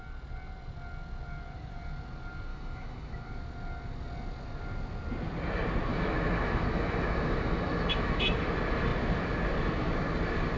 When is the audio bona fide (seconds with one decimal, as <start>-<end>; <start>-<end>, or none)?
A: 0.0-2.5; 3.3-5.9; 8.4-10.6